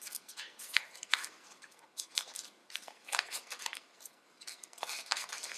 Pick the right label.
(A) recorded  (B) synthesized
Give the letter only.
B